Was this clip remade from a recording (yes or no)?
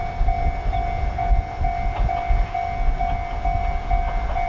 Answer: no